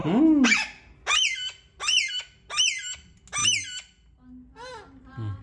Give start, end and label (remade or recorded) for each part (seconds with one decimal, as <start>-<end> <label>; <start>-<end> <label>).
0.0-5.4 recorded